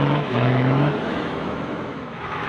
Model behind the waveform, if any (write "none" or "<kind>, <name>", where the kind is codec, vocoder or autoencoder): autoencoder, DAC-VAE